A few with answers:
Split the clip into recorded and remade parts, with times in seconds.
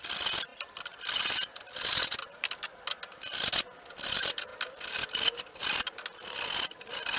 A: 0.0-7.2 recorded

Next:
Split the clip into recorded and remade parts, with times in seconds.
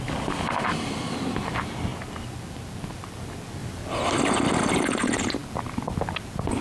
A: 0.0-6.6 recorded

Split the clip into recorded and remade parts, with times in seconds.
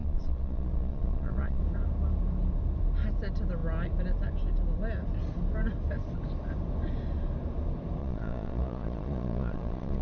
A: 0.0-1.6 remade; 1.6-8.0 recorded; 8.0-10.0 remade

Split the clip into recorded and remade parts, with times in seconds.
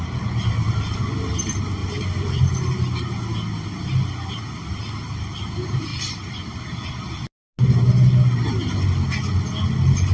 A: 0.0-1.8 recorded; 1.8-2.5 remade; 2.5-5.9 recorded; 5.9-6.6 remade; 6.6-10.1 recorded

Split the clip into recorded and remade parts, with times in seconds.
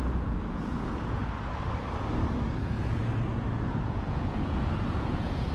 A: 0.0-1.2 remade; 1.2-2.6 recorded; 2.6-3.0 remade; 3.0-3.7 recorded; 3.7-5.5 remade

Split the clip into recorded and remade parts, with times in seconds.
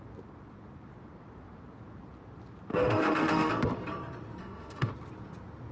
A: 0.0-2.7 recorded; 2.7-3.5 remade; 3.5-4.4 recorded; 4.4-4.9 remade; 4.9-5.7 recorded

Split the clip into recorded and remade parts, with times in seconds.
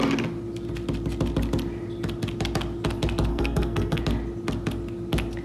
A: 0.0-3.3 recorded; 3.3-4.0 remade; 4.0-5.4 recorded